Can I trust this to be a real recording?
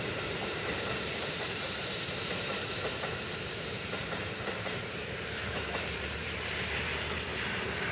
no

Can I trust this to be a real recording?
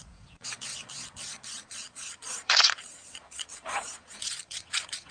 no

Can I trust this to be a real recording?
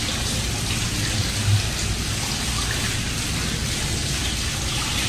yes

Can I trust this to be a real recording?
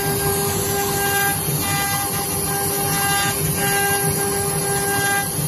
yes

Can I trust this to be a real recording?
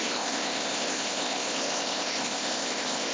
no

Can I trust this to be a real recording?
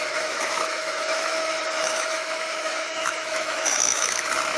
no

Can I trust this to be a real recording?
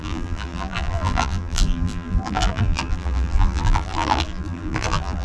no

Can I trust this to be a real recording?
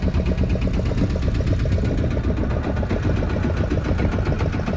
yes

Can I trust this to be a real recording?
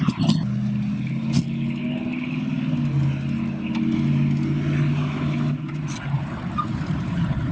yes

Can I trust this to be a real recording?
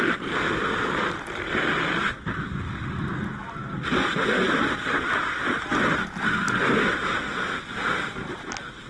yes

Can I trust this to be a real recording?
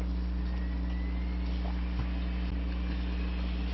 yes